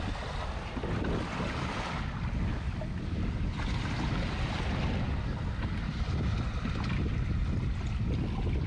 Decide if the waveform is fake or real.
real